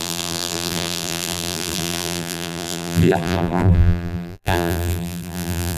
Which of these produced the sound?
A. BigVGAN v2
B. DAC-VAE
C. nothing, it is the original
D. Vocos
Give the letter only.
A